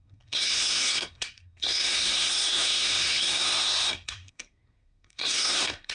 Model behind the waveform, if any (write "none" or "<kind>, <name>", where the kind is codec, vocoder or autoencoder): codec, SNAC